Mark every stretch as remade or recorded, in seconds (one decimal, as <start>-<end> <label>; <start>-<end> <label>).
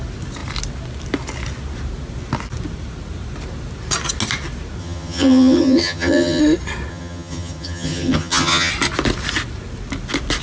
0.0-4.8 recorded; 4.8-6.4 remade; 6.4-6.9 recorded; 6.9-8.7 remade; 8.7-10.4 recorded